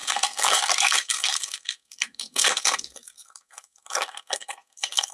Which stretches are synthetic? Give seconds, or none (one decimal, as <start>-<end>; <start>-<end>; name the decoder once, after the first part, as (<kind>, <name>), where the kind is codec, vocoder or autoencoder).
0.0-5.1 (codec, SNAC)